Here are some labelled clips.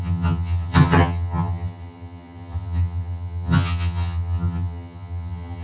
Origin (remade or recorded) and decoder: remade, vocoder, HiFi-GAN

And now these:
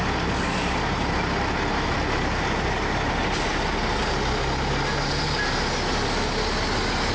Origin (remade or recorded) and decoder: recorded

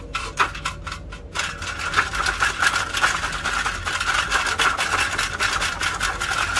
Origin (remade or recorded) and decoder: recorded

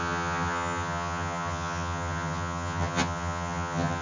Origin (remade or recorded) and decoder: remade, vocoder, HiFi-GAN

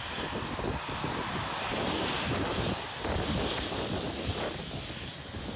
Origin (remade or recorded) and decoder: recorded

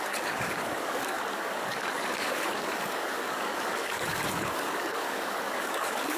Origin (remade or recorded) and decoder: remade, codec, DAC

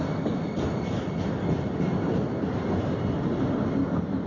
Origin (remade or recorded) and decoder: recorded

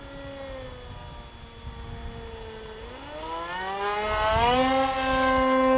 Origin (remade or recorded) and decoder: recorded